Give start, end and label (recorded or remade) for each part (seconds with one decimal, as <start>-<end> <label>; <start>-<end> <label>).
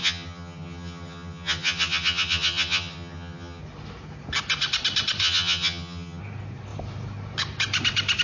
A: 0.0-3.6 remade; 3.6-5.2 recorded; 5.2-6.2 remade; 6.2-8.2 recorded